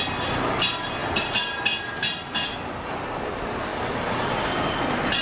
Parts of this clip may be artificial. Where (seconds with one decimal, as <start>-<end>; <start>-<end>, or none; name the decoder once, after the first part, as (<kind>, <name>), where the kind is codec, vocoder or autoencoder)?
none